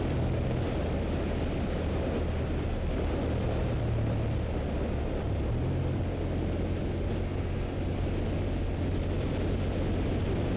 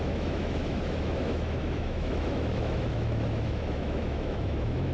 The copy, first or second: second